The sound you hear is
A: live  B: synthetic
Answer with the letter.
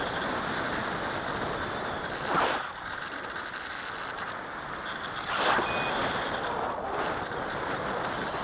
A